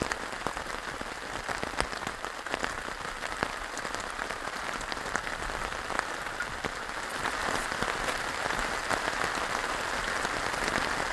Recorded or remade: recorded